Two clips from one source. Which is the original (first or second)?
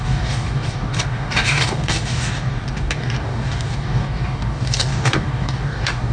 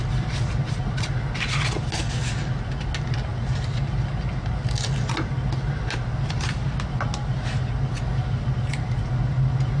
second